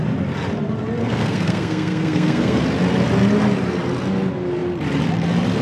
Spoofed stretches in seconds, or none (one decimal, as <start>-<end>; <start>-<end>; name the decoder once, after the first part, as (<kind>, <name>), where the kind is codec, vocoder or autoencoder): 1.0-2.6 (codec, SNAC)